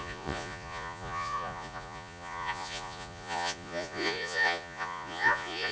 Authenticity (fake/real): fake